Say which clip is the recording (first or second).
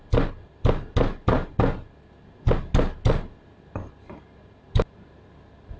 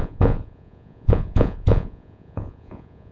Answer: first